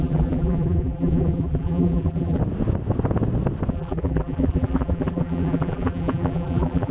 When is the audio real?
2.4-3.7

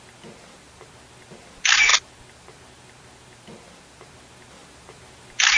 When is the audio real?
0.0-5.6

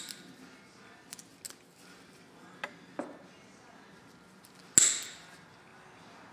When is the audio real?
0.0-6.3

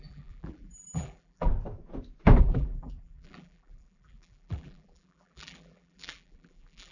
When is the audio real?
1.5-2.4

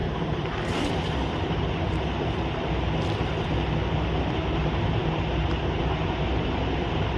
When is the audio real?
2.7-7.2

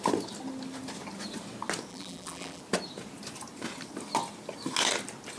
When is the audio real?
0.0-1.9; 2.6-5.4

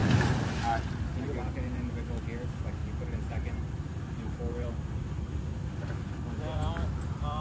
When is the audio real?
0.0-2.8